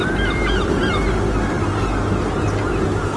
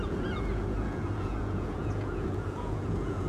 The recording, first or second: first